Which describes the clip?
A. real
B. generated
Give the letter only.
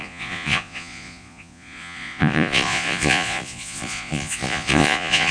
B